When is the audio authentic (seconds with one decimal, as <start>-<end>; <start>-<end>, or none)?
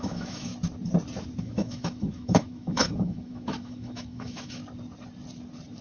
0.5-1.4; 4.6-5.8